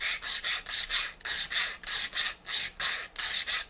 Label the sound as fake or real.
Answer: real